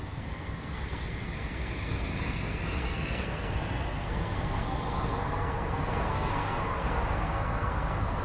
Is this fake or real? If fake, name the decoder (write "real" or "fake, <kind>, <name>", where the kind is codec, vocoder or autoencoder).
fake, codec, SNAC